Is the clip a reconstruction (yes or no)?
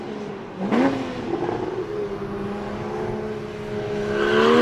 no